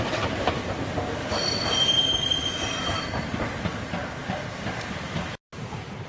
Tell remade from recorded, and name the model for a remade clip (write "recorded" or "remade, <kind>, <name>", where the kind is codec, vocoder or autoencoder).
recorded